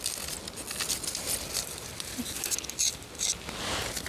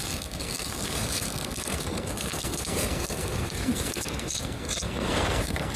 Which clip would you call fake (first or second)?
second